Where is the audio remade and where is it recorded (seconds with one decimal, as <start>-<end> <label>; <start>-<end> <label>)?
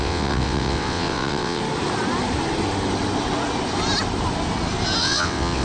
0.0-1.6 remade; 1.6-5.0 recorded; 5.0-5.6 remade